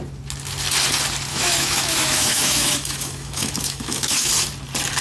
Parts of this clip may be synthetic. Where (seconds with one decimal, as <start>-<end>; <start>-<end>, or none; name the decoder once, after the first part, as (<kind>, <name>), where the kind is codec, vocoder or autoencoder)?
1.3-4.3 (autoencoder, DAC-VAE)